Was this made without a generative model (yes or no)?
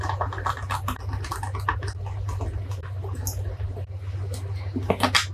yes